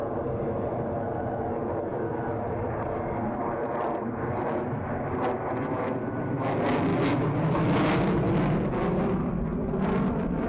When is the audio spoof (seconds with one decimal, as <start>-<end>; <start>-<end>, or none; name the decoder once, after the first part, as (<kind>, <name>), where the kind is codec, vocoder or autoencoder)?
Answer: none